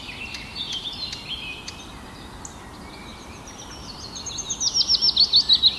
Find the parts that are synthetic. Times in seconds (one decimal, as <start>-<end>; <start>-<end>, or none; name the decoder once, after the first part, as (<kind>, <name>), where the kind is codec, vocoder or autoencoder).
0.5-1.1 (vocoder, BigVGAN v2); 3.1-4.2